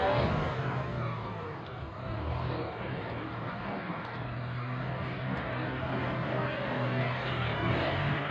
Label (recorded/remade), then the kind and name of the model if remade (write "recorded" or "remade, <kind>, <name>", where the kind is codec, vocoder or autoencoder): remade, codec, DAC